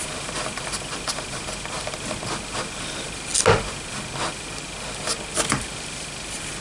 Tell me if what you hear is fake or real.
real